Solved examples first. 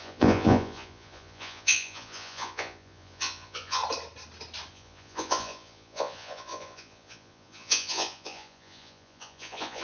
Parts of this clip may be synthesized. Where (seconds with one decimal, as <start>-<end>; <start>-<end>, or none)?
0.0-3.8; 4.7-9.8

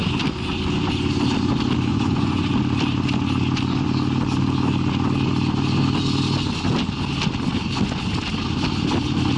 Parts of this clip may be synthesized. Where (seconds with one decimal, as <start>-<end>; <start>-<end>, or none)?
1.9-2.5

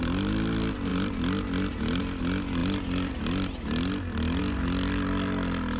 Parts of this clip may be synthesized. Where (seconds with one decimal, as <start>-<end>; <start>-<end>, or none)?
none